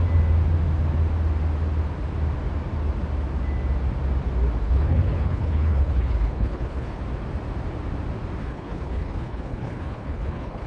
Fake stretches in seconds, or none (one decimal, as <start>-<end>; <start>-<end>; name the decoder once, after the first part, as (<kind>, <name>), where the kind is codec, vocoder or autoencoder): 4.6-7.0 (codec, HILCodec); 8.4-10.7